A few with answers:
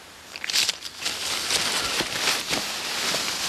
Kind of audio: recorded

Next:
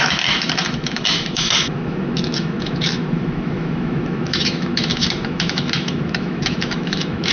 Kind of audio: remade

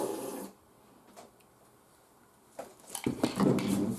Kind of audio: recorded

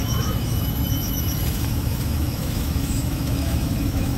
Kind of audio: remade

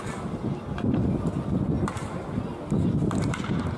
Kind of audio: recorded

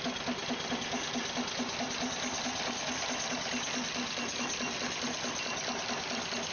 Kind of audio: recorded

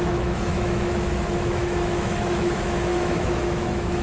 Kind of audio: remade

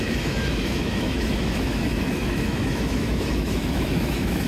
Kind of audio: remade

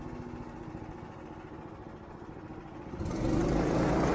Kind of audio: recorded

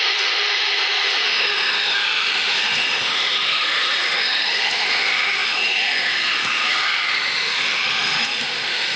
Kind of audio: remade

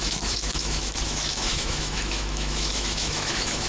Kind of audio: remade